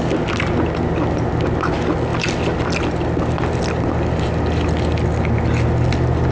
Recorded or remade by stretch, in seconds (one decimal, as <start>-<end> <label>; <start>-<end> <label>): 0.0-6.3 recorded